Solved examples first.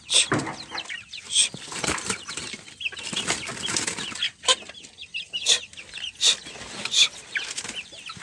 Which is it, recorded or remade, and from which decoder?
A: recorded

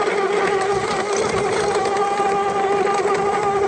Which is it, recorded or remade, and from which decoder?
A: recorded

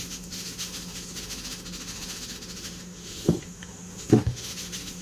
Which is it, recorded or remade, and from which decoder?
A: remade, autoencoder, DAC-VAE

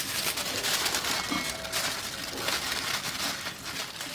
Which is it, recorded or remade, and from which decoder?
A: recorded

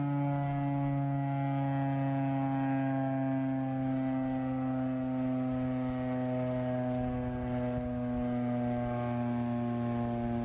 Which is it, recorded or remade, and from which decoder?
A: recorded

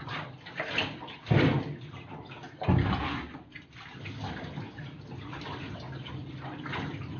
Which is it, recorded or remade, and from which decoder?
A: recorded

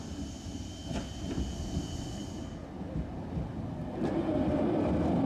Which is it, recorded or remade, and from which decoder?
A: recorded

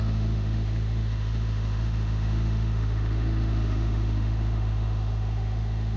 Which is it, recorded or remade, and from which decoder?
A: remade, autoencoder, DAC-VAE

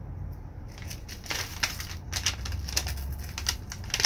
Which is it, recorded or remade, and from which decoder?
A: recorded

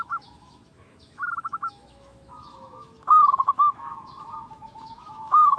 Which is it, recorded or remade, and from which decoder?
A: remade, autoencoder, DAC-VAE